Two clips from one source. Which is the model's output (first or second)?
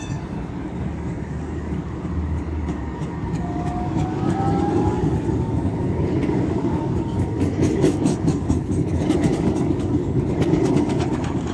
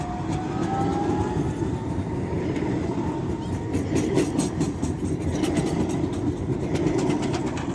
first